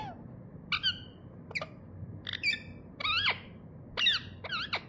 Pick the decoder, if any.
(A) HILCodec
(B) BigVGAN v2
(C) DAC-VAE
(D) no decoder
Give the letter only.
D